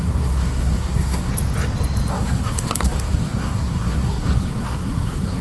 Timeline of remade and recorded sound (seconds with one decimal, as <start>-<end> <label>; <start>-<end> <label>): 0.0-1.3 remade; 1.3-2.1 recorded; 2.1-5.4 remade